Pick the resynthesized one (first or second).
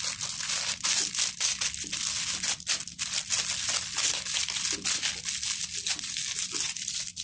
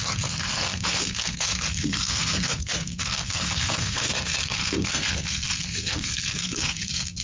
second